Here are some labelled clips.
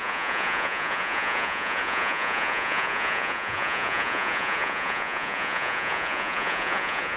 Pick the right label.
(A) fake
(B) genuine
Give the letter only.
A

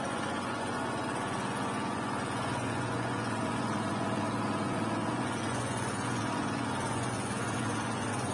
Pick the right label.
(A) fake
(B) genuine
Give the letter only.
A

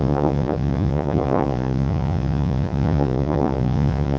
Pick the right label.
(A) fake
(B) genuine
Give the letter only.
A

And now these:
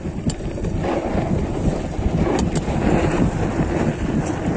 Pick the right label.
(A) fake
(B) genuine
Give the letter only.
B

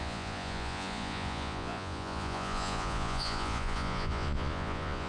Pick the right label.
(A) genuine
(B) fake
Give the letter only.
B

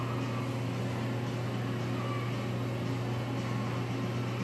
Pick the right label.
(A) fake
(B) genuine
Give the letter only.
B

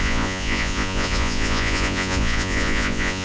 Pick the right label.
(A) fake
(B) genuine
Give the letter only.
A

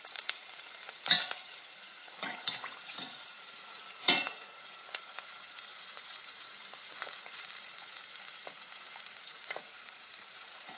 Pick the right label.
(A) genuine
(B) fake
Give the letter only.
B